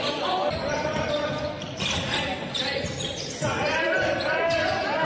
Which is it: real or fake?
real